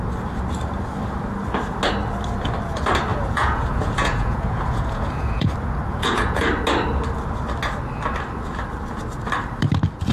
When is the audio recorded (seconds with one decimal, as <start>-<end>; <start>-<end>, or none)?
0.0-3.1; 5.5-5.9; 6.5-10.1